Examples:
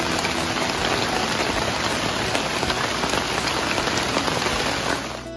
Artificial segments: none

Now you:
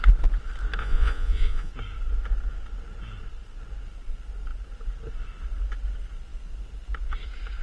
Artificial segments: 0.8-1.7 (vocoder, Vocos)

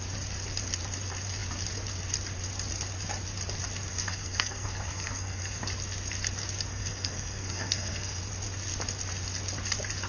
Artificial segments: 3.9-5.6 (codec, SNAC); 6.7-8.3

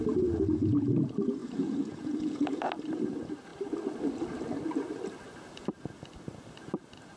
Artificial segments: 1.4-2.6 (vocoder, Vocos)

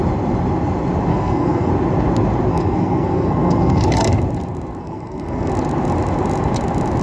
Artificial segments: 1.1-1.7 (codec, SNAC); 2.5-4.1; 4.8-5.5